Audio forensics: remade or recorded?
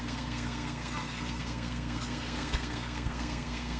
remade